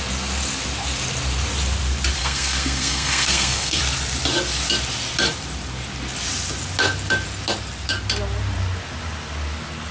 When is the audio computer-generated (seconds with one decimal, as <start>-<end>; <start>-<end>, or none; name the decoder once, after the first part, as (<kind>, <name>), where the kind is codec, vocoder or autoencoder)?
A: 2.2-3.8 (codec, SNAC)